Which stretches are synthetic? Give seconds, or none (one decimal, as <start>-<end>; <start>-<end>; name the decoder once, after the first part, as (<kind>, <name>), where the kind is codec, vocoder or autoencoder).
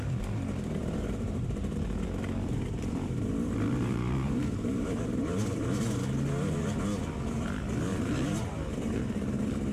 0.8-5.8 (vocoder, BigVGAN v2); 7.9-9.0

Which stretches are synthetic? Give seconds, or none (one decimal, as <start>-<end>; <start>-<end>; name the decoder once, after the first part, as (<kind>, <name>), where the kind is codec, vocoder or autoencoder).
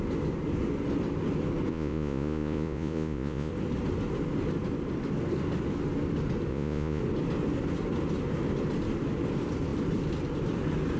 1.7-3.5 (vocoder, Vocos); 6.5-7.0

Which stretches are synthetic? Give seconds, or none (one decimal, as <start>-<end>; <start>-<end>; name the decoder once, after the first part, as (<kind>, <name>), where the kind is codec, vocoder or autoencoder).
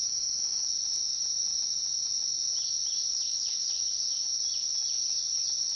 1.5-2.2 (vocoder, Vocos); 3.1-4.3